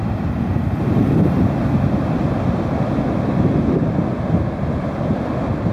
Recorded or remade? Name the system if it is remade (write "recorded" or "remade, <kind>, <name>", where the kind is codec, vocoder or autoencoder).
remade, vocoder, BigVGAN v2